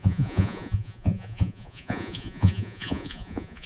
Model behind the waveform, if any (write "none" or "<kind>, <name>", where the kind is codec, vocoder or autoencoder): vocoder, Vocos